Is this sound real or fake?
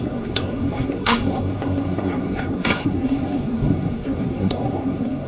fake